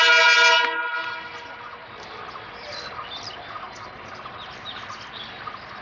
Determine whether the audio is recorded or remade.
recorded